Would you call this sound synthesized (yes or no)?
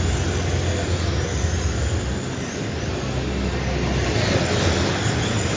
no